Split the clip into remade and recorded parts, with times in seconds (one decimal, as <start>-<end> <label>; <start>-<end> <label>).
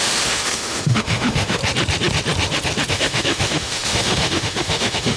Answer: 0.0-1.6 remade; 1.6-2.9 recorded; 2.9-5.2 remade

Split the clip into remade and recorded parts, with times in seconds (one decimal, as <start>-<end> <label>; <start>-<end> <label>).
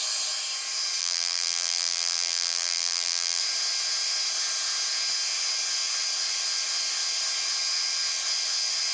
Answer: 0.0-1.0 recorded; 1.0-3.4 remade; 3.4-8.9 recorded